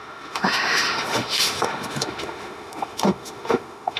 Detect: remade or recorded remade